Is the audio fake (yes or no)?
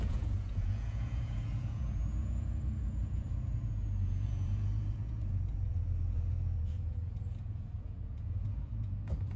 yes